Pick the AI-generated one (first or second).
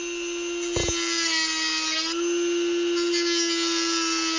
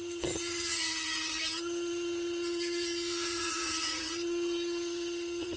second